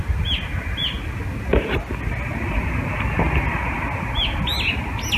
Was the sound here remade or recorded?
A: recorded